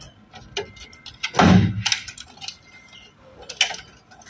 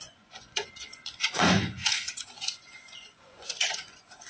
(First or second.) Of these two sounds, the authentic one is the first